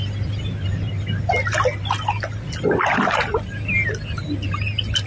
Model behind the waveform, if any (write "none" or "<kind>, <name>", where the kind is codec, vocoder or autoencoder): none